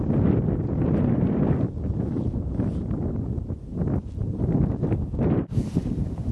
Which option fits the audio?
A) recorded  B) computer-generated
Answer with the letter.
A